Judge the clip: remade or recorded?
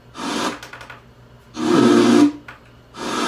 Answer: recorded